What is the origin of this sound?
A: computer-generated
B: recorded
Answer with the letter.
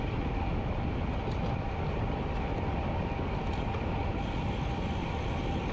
B